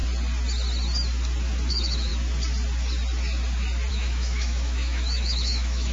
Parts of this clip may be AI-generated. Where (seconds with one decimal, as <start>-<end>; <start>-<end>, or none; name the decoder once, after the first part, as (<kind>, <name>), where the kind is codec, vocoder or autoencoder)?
1.7-2.1 (autoencoder, DAC-VAE); 3.9-5.9